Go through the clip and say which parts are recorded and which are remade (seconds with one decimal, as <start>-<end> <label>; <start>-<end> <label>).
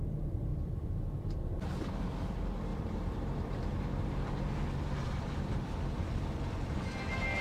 0.0-0.5 recorded; 0.5-1.5 remade; 1.5-2.7 recorded; 2.7-3.6 remade; 3.6-5.0 recorded; 5.0-6.0 remade; 6.0-7.4 recorded